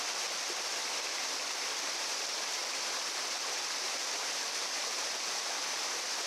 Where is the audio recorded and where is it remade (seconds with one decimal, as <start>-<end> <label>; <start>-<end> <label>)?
0.0-2.6 recorded; 2.6-6.3 remade